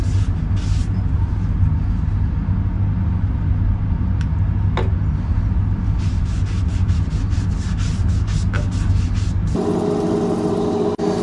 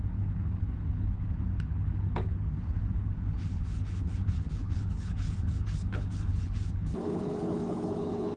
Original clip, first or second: first